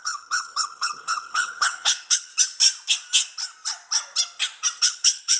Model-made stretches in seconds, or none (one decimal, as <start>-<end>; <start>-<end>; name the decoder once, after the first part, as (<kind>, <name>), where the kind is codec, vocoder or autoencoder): 0.0-2.3 (codec, HILCodec); 4.8-5.4